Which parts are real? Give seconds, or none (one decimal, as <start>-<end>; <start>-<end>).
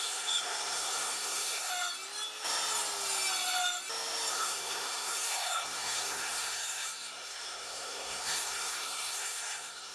1.7-4.3